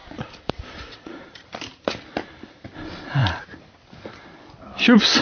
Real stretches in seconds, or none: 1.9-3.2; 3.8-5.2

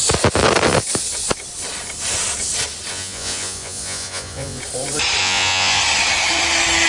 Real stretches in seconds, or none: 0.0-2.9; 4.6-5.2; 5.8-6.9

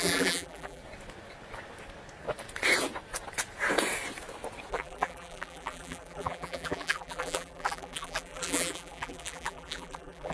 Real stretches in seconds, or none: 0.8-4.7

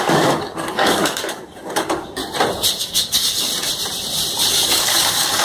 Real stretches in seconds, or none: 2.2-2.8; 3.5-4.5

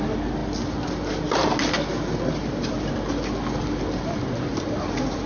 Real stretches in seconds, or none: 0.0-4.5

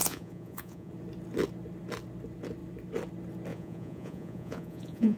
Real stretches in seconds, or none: 0.9-3.5

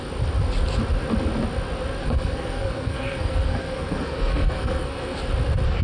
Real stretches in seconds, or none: 0.0-2.0; 5.2-5.8